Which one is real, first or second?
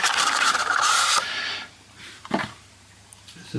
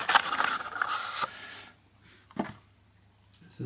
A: second